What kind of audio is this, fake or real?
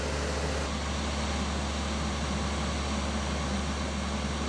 real